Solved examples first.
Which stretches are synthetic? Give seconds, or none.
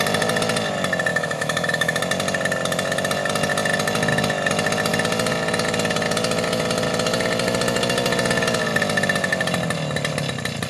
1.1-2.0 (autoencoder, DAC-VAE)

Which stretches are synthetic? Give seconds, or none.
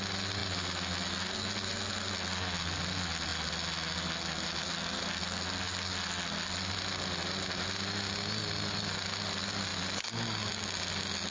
none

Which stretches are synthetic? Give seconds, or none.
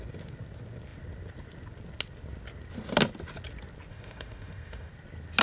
3.9-4.9 (autoencoder, DAC-VAE)